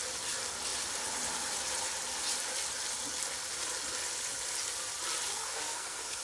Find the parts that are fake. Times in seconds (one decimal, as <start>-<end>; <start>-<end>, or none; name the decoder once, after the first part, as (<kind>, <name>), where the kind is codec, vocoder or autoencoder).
5.3-6.2 (codec, SNAC)